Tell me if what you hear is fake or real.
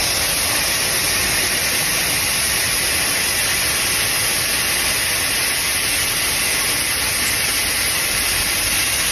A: real